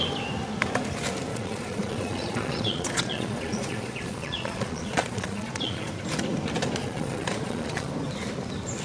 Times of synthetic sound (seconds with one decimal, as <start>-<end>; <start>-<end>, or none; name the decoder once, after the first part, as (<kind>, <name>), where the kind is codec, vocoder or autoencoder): 1.3-5.9 (vocoder, Vocos); 6.8-7.9